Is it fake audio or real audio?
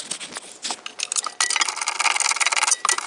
real